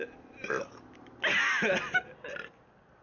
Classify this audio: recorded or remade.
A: recorded